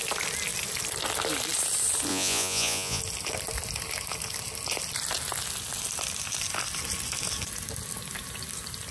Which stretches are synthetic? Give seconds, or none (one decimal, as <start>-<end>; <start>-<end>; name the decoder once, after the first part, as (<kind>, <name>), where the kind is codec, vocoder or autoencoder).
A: 2.1-3.0 (vocoder, Vocos)